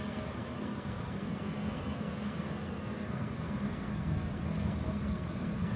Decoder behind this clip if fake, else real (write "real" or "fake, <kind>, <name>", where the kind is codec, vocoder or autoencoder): fake, codec, SNAC